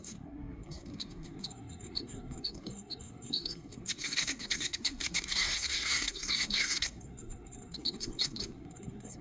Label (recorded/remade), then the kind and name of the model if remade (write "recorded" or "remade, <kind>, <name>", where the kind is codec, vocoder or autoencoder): remade, codec, SNAC